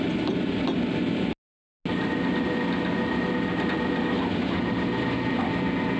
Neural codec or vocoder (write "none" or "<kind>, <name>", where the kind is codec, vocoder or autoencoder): none